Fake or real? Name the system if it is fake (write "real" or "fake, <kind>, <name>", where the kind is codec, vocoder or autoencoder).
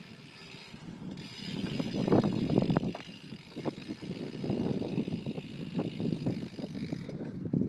real